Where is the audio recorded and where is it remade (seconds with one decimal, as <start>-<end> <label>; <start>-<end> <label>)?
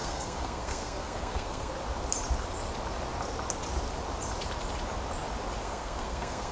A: 0.0-1.7 remade; 1.7-5.6 recorded; 5.6-6.5 remade